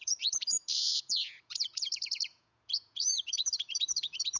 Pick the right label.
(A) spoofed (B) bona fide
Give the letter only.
A